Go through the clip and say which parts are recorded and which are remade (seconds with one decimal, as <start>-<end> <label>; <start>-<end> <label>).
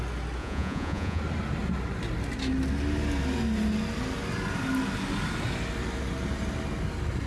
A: 0.0-0.4 recorded; 0.4-1.2 remade; 1.2-7.3 recorded